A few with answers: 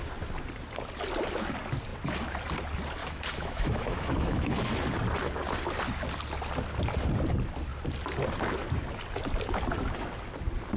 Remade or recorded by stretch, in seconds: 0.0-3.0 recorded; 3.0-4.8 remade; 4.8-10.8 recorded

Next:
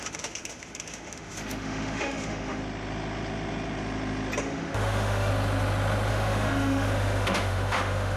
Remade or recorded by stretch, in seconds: 0.0-2.6 remade; 2.6-4.4 recorded; 4.4-5.3 remade; 5.3-6.1 recorded; 6.1-8.2 remade

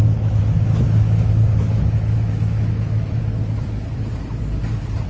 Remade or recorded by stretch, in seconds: 0.0-0.4 recorded; 0.4-3.2 remade; 3.2-5.1 recorded

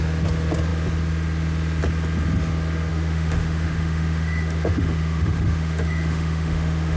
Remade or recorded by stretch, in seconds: 0.0-2.9 recorded; 2.9-7.0 remade

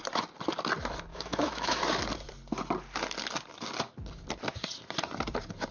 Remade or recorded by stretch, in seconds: 0.0-1.1 recorded; 1.1-1.8 remade; 1.8-5.7 recorded

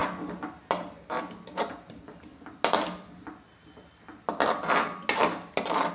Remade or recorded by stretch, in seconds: 0.0-5.9 recorded

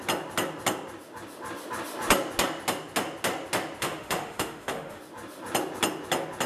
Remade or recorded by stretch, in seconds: 0.0-3.8 recorded; 3.8-5.0 remade; 5.0-6.5 recorded